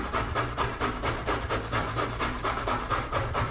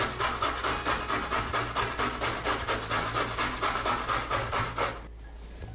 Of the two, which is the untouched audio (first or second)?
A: second